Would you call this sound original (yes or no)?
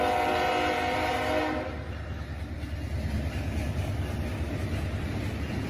yes